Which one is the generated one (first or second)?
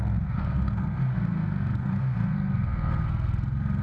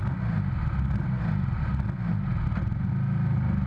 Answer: first